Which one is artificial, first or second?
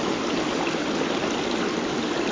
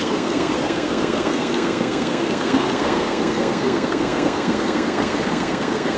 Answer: second